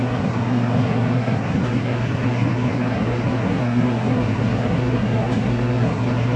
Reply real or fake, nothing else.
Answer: fake